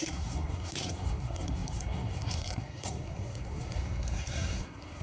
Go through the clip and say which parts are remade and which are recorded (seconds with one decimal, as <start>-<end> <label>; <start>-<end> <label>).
0.0-5.0 remade